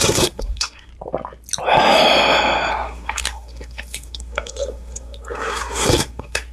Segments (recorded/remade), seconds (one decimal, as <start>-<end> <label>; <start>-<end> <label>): 0.0-0.9 remade; 0.9-2.7 recorded; 2.7-6.5 remade